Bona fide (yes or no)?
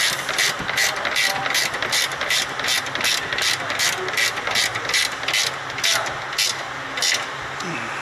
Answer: yes